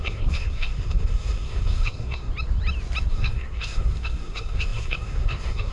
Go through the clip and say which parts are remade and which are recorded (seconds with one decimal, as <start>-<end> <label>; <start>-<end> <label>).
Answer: 0.0-2.3 remade; 2.3-3.1 recorded; 3.1-5.7 remade